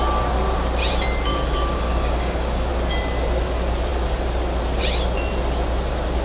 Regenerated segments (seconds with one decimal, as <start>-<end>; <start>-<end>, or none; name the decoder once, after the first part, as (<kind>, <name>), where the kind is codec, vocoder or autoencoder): 1.3-2.7 (codec, DAC)